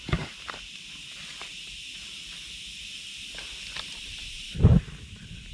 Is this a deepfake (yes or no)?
no